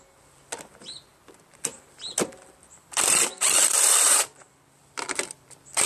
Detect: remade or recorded remade